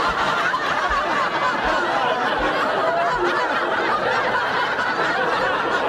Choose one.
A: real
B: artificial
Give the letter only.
A